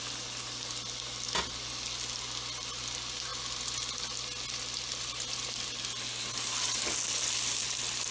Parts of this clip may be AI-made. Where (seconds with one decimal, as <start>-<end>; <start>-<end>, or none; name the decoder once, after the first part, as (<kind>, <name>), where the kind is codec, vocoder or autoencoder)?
none